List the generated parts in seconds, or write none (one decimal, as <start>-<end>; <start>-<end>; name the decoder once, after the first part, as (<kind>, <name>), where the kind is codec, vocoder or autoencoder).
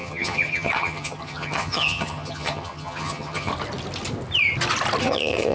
0.0-3.5 (vocoder, HiFi-GAN); 5.0-5.5